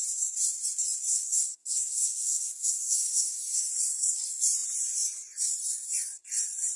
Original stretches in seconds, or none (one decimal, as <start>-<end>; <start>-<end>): 0.0-1.1; 3.7-6.8